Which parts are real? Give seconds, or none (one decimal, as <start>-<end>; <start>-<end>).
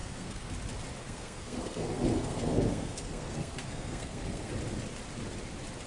0.5-1.0; 4.5-5.9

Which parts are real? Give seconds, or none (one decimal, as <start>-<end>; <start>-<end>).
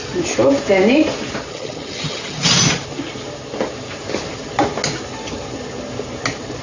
0.0-1.5; 2.4-6.6